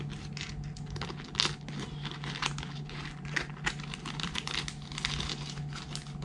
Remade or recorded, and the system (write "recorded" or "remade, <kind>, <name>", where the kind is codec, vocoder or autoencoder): recorded